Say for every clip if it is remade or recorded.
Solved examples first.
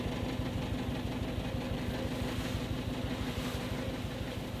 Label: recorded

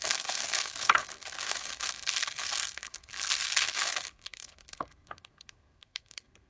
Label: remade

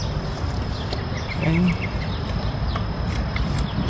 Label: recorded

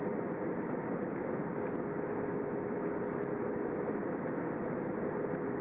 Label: recorded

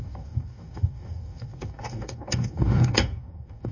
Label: remade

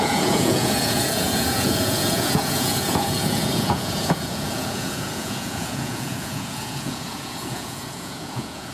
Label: remade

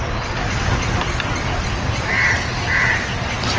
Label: recorded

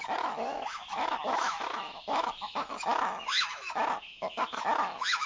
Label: remade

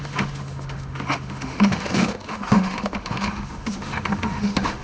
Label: remade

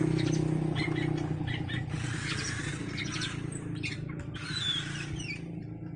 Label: recorded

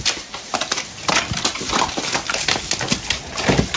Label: recorded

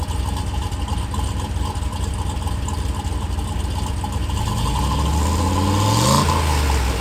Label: recorded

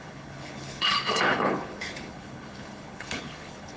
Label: remade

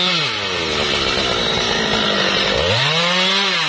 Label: recorded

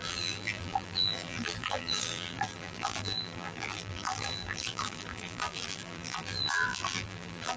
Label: remade